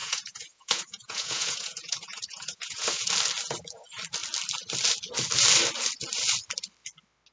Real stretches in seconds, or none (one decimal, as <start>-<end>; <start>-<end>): 3.1-7.3